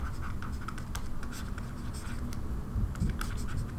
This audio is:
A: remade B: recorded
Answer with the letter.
B